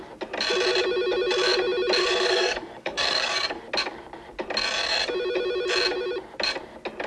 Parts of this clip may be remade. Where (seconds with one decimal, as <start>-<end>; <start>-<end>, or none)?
2.0-3.6